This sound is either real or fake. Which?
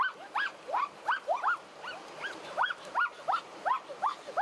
real